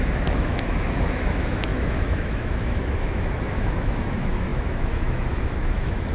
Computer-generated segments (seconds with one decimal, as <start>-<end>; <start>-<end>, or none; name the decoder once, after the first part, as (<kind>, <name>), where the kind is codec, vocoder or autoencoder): 0.0-6.1 (autoencoder, DAC-VAE)